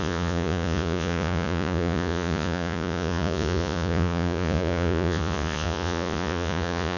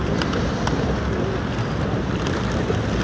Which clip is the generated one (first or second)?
first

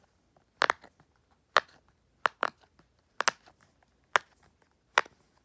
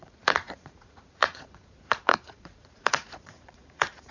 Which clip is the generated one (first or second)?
second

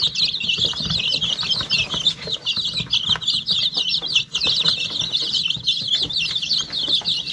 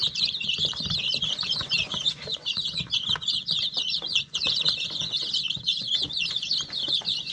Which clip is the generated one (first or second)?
second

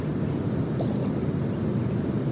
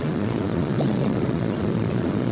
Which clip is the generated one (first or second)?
second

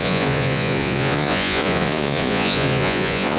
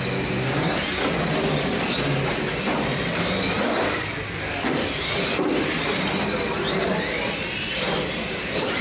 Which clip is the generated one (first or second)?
first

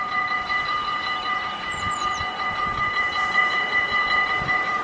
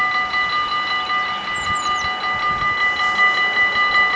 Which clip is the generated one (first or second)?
first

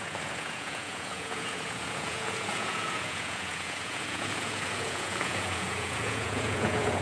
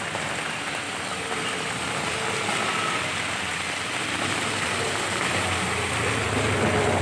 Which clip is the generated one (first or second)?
first